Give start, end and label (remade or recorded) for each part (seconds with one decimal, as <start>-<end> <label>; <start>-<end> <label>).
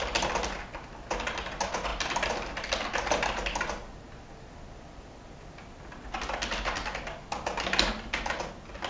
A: 0.0-8.9 recorded